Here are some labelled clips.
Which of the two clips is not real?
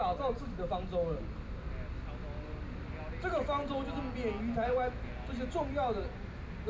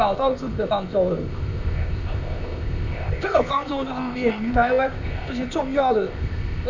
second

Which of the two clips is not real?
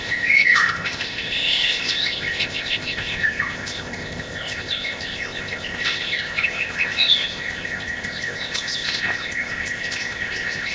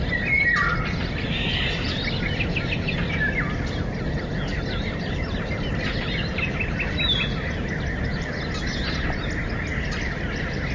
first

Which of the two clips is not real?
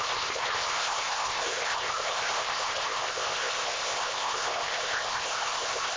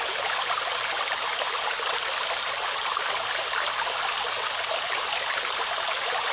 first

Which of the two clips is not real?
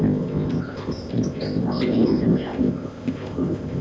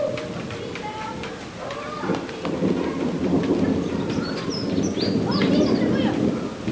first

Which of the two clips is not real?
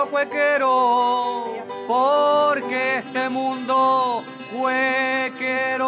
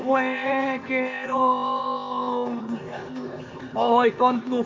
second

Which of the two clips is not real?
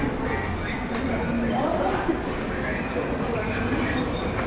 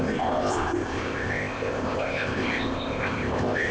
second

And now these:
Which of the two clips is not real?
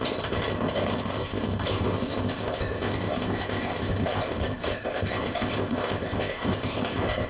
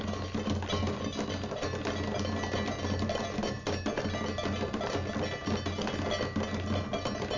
first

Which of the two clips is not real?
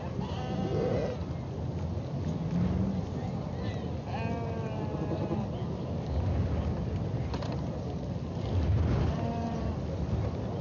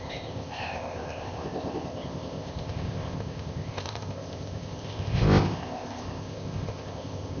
second